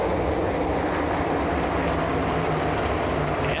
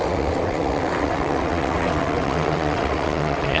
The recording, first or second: first